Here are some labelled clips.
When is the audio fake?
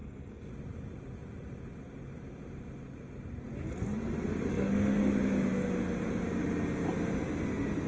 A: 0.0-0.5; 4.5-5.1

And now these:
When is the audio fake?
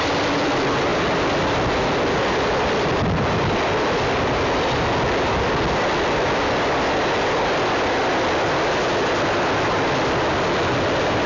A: none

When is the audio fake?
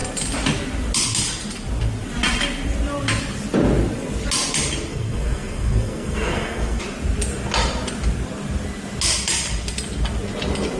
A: 4.9-6.8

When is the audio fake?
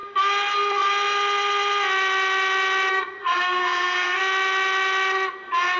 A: 2.9-4.2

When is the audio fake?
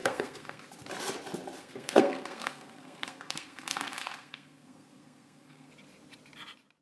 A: 0.0-0.6; 1.6-5.7